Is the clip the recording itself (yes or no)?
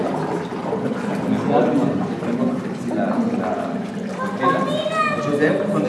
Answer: yes